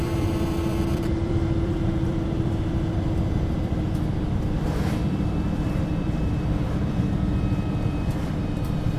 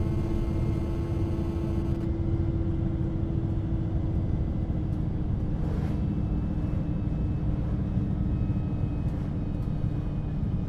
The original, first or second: second